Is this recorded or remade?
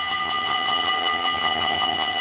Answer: remade